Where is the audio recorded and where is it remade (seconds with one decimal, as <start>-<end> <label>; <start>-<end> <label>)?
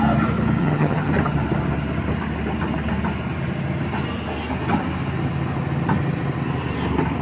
0.0-0.6 recorded; 0.6-1.1 remade; 1.1-7.2 recorded